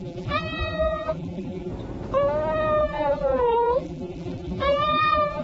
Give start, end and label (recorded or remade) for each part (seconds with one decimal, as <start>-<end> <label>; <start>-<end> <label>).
0.0-1.7 remade; 1.7-2.8 recorded; 2.8-5.4 remade